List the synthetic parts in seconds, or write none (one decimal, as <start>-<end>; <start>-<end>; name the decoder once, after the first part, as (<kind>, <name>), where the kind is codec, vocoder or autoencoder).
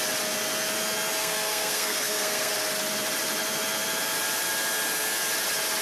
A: 1.2-2.5 (codec, SNAC)